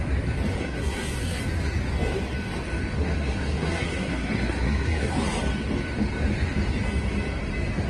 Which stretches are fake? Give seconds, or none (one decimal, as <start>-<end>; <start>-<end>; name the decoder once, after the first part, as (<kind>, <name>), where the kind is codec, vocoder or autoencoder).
0.6-1.4 (codec, SNAC); 3.0-5.1

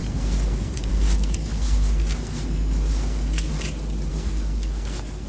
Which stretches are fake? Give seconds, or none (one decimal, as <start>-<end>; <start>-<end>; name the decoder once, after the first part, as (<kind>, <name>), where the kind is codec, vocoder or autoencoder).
0.0-3.5 (codec, SNAC); 4.1-5.3

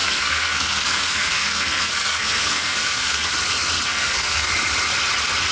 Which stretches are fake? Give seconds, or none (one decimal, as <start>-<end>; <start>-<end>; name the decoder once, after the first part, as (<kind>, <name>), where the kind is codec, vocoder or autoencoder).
0.0-3.3 (codec, SNAC); 3.9-4.5

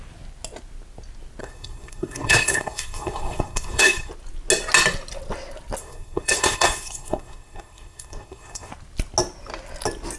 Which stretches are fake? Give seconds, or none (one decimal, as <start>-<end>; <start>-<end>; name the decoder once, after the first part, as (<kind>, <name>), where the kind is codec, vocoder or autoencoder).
1.4-4.1 (codec, SNAC); 5.8-8.7

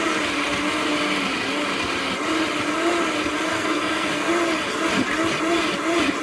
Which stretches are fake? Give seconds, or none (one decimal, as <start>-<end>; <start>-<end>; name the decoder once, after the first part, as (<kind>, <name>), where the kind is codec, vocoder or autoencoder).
3.5-4.3 (codec, SNAC)